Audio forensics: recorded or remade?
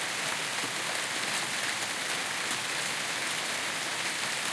recorded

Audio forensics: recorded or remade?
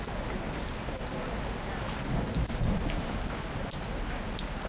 recorded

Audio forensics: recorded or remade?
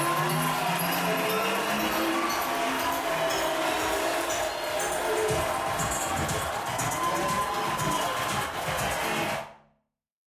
recorded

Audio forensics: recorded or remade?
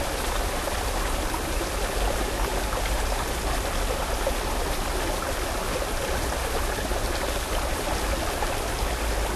recorded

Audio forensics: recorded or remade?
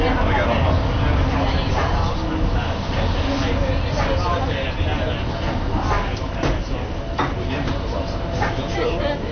recorded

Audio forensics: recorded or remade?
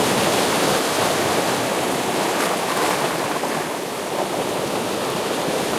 remade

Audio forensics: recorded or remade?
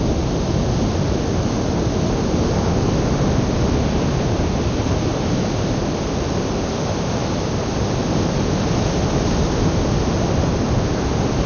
recorded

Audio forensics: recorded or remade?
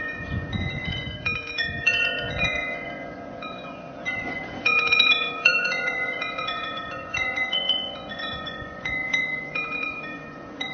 remade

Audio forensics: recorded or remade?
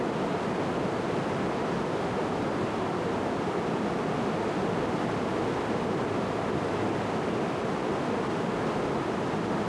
recorded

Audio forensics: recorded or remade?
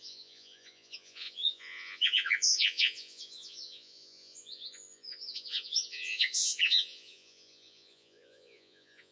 remade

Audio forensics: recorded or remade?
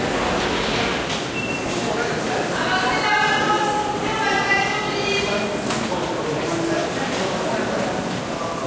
recorded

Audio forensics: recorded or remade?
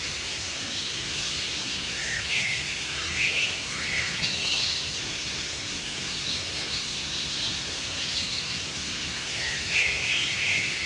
remade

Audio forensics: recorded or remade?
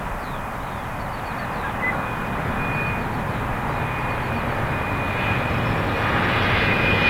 recorded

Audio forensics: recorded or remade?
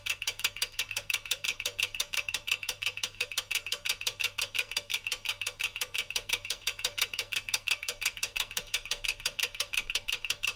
remade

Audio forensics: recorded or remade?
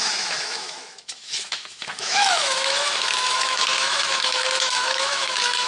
remade